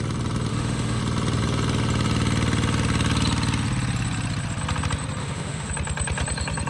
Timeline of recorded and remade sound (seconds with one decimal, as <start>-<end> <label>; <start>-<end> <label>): 0.0-0.5 recorded; 0.5-1.0 remade; 1.0-5.2 recorded; 5.2-5.7 remade; 5.7-6.7 recorded